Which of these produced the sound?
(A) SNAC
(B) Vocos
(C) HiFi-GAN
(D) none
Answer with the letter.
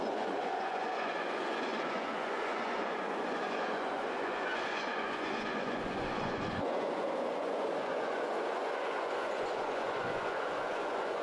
B